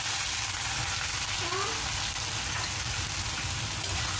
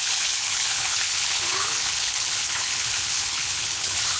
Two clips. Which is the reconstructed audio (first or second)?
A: second